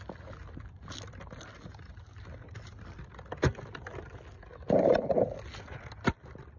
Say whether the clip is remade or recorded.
recorded